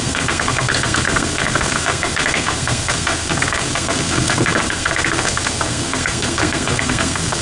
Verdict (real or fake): fake